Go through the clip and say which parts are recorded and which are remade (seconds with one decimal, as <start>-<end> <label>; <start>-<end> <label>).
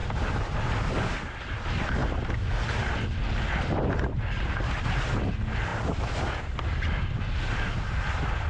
0.0-0.6 remade; 0.6-8.5 recorded